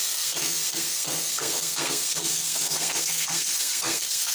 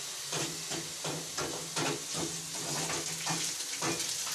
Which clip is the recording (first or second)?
second